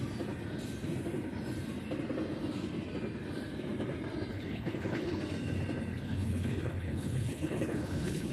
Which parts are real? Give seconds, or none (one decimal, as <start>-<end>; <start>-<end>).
0.0-4.3; 5.2-5.9